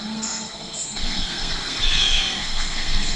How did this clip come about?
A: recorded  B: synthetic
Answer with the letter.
B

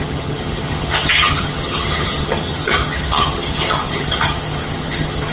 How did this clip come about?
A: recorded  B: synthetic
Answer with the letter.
B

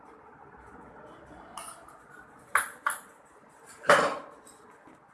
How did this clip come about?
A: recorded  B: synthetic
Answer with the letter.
A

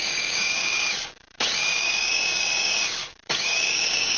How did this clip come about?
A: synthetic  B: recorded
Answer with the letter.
A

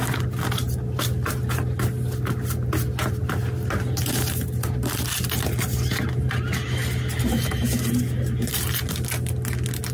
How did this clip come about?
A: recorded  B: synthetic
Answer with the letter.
A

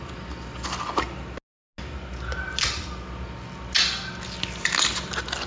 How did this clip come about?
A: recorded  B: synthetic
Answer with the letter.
A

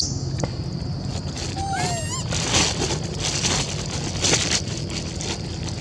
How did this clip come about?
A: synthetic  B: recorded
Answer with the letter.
B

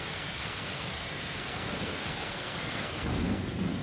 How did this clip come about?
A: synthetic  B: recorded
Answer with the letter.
A